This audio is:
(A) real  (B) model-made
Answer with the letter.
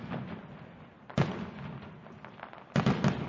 A